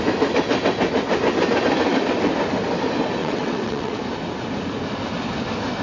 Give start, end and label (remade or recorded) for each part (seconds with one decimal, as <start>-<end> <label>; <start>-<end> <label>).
0.0-3.2 recorded; 3.2-4.0 remade; 4.0-5.8 recorded